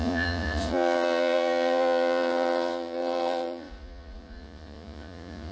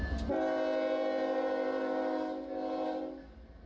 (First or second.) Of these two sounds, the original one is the second